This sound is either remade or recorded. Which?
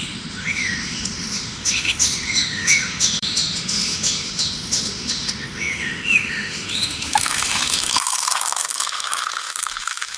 remade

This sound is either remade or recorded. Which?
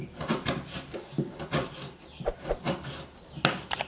recorded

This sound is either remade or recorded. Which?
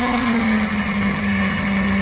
remade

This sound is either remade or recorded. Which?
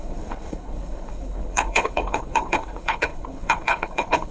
remade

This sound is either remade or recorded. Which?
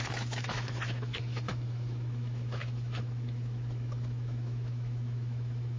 remade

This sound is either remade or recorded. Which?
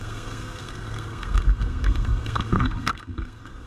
remade